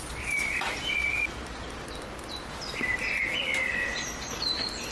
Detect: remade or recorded recorded